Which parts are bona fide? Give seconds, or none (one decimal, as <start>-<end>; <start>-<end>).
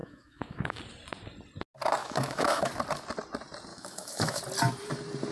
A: 0.8-2.0; 2.7-3.7; 4.4-5.3